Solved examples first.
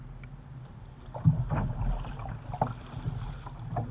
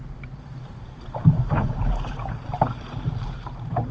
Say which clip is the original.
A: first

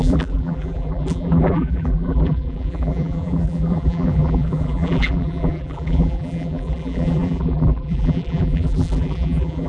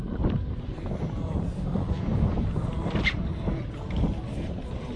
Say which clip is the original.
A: second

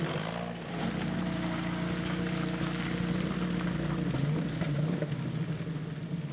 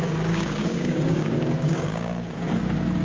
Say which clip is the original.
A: first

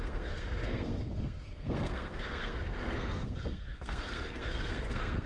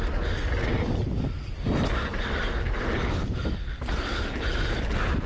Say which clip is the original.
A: second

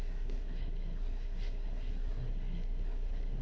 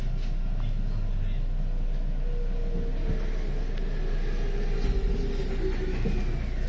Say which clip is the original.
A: second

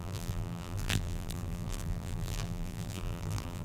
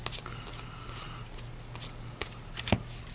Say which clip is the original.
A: second